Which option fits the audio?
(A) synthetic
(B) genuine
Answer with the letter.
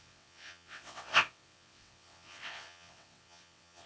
A